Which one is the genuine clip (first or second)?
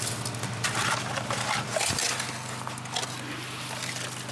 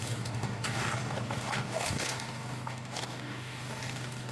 first